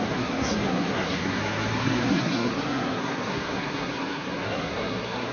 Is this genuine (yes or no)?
no